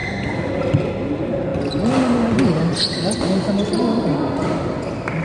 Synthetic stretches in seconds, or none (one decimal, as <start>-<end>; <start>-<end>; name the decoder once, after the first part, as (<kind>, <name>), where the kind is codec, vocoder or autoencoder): none